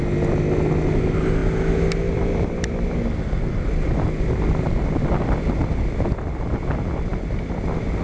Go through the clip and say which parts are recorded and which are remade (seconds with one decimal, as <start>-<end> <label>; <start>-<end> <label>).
0.0-8.0 recorded